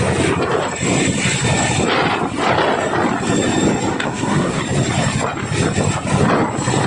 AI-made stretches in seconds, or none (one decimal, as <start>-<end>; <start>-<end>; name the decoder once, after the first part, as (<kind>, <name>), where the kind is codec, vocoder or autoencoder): 3.9-4.6 (codec, SNAC)